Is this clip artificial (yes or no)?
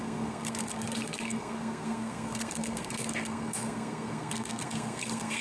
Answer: yes